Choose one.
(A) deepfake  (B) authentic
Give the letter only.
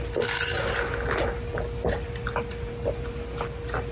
B